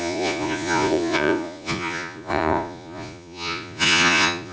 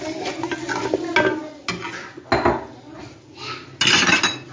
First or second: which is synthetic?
first